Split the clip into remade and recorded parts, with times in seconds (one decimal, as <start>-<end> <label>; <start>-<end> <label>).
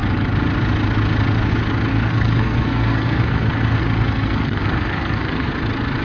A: 0.0-1.9 recorded; 1.9-5.5 remade; 5.5-6.0 recorded